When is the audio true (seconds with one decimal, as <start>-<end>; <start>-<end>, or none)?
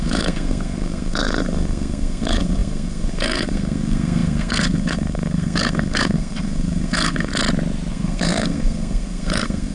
7.3-7.9